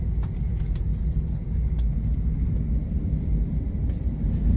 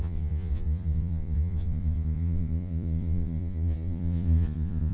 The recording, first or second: first